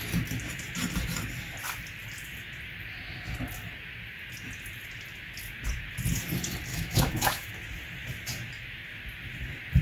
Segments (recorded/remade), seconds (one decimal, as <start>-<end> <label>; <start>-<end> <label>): 0.0-6.7 recorded; 6.7-7.5 remade; 7.5-9.8 recorded